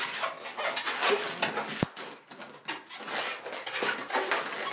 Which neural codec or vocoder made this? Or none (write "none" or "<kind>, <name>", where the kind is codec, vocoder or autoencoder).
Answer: none